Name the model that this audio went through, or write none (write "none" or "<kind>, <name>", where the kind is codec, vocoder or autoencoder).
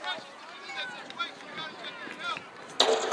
none